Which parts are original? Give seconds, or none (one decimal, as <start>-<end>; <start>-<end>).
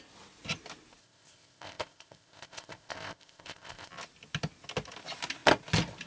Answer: 0.0-1.0; 3.9-6.1